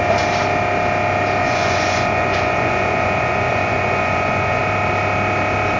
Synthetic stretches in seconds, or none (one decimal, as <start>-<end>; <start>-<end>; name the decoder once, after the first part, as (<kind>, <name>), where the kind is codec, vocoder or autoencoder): 1.4-4.6 (vocoder, Vocos)